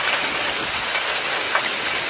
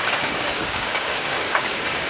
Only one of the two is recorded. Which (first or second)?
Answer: first